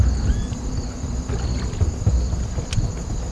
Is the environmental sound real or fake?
real